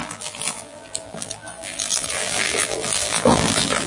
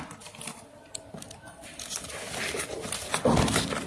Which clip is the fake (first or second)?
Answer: first